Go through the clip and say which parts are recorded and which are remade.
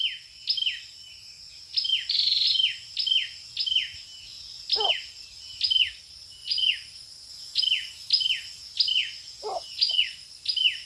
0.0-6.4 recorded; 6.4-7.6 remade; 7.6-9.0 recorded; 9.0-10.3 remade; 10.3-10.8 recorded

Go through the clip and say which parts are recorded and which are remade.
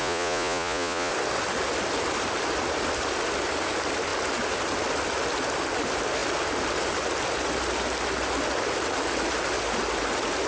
0.0-1.1 remade; 1.1-10.5 recorded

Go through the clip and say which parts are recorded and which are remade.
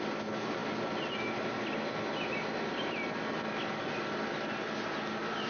0.0-5.5 recorded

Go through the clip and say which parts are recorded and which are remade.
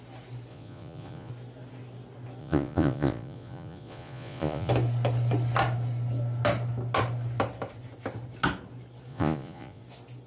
0.0-0.5 recorded; 0.5-1.3 remade; 1.3-2.4 recorded; 2.4-4.7 remade; 4.7-9.1 recorded; 9.1-9.8 remade; 9.8-10.3 recorded